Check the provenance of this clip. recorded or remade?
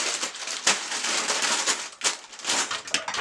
recorded